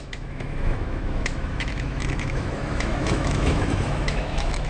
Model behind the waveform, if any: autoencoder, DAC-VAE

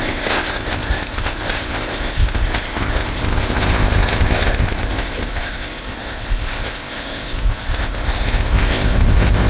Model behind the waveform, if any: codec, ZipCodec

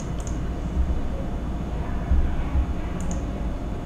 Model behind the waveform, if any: none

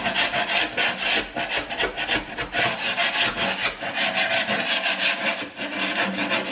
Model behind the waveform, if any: none